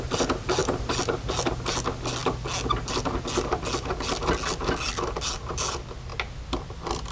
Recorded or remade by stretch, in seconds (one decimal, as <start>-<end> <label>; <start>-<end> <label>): 0.0-7.1 recorded